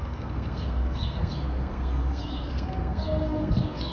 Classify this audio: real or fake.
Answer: fake